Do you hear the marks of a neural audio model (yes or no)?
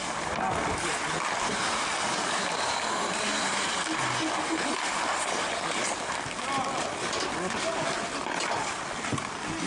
no